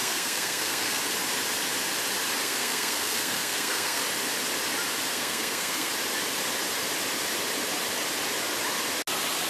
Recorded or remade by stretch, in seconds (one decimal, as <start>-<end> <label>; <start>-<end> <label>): 0.0-1.0 remade; 1.0-2.4 recorded; 2.4-4.0 remade; 4.0-5.1 recorded; 5.1-5.9 remade; 5.9-9.5 recorded